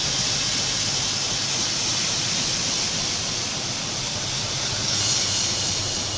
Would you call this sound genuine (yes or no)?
yes